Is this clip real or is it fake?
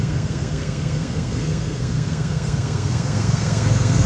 fake